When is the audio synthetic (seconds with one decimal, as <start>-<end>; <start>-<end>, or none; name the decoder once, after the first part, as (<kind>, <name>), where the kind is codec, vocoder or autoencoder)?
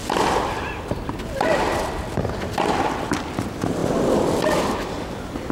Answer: 0.0-3.3 (vocoder, BigVGAN v2); 3.8-4.6